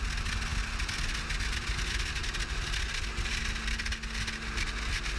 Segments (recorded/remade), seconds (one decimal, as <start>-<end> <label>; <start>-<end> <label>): 0.0-5.2 recorded